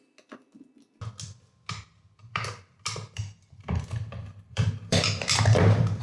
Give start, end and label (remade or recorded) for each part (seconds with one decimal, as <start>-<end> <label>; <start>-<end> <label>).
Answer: 0.0-2.2 recorded; 2.2-6.0 remade